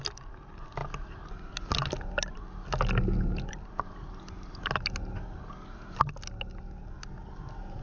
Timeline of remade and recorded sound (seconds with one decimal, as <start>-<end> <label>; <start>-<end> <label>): 0.0-7.8 recorded